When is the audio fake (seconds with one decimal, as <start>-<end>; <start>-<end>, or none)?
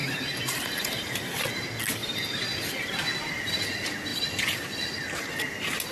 0.0-1.5; 2.0-2.7; 4.1-4.8